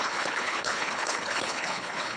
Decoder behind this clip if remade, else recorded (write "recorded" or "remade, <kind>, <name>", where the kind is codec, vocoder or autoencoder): remade, codec, HILCodec